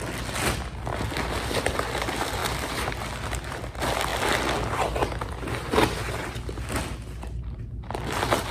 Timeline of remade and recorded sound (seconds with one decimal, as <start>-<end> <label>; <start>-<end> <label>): 0.0-8.5 recorded